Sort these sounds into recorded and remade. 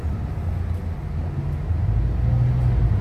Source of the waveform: recorded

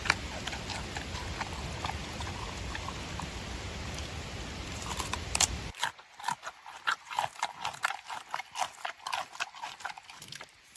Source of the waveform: remade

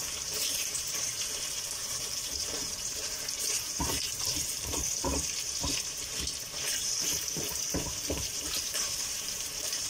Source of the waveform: remade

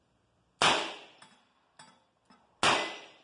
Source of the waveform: recorded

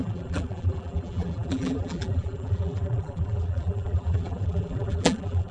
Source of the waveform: remade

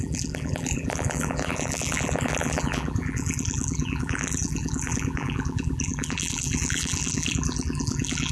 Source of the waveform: remade